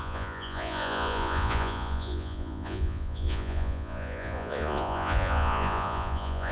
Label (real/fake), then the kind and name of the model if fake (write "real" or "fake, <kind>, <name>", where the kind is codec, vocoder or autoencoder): fake, vocoder, Vocos